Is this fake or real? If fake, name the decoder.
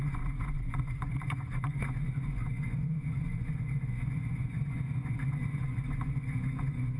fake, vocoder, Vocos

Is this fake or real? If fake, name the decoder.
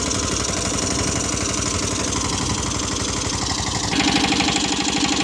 real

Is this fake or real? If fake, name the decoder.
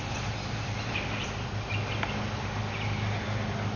real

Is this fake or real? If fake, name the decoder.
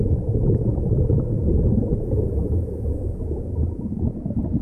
fake, vocoder, Vocos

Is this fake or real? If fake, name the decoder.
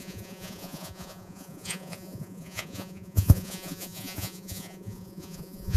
fake, vocoder, Vocos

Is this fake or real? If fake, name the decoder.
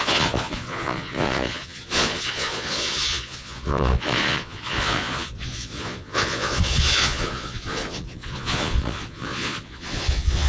fake, vocoder, Vocos